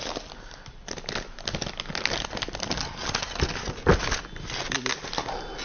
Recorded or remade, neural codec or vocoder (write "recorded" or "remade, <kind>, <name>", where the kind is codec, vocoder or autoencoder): recorded